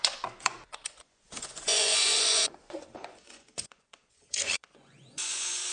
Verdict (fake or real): fake